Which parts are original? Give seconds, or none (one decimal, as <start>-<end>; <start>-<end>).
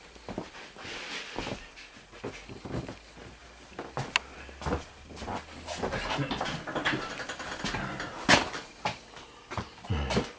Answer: 0.0-10.4